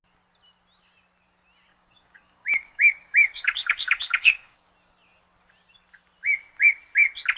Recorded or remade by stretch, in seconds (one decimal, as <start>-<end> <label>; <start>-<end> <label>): 0.0-1.7 recorded; 1.7-4.7 remade; 4.7-7.4 recorded